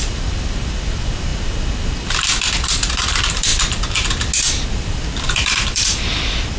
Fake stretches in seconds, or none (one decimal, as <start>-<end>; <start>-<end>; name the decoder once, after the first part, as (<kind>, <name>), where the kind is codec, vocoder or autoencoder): 0.0-1.3 (vocoder, BigVGAN v2); 2.2-3.5; 4.7-6.6